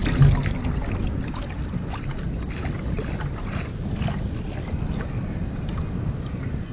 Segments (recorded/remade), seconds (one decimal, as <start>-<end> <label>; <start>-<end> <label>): 0.0-6.7 recorded